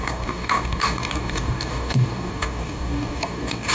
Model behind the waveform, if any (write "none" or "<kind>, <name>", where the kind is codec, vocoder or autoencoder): codec, DAC